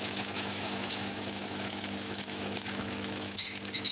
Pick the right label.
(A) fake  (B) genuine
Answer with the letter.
A